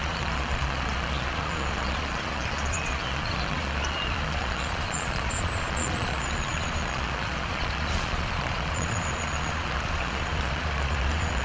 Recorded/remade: remade